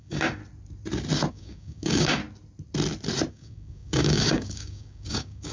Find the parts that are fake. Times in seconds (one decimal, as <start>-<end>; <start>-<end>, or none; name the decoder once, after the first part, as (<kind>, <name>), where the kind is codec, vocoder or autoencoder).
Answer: 0.0-0.4 (codec, DAC); 1.3-2.2; 3.3-5.5